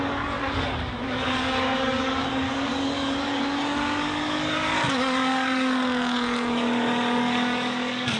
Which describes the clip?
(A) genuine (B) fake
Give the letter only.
B